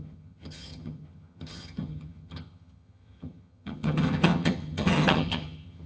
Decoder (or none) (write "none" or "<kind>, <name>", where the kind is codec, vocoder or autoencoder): vocoder, HiFi-GAN